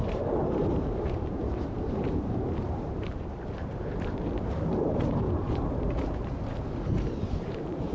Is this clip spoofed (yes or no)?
yes